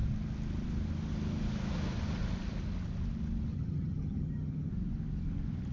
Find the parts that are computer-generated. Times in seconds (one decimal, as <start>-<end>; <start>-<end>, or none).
3.5-4.7